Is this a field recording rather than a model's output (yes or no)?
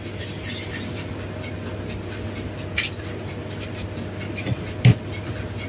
yes